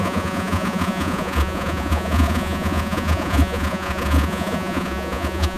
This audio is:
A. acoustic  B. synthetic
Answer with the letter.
B